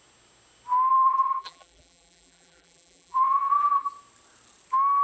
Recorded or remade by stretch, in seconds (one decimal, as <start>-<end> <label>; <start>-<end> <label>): 0.0-0.9 recorded; 0.9-3.9 remade; 3.9-5.0 recorded